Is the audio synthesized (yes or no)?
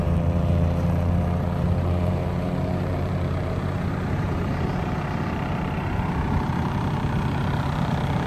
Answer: yes